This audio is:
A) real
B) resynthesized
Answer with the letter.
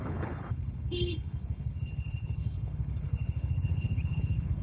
B